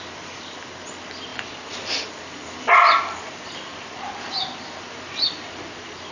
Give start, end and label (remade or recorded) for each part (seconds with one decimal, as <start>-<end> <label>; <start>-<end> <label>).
0.0-1.3 recorded; 1.3-4.1 remade; 4.1-6.1 recorded